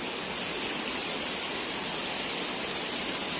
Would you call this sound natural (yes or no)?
yes